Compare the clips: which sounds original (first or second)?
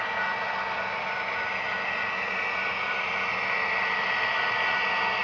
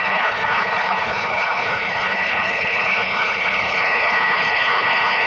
first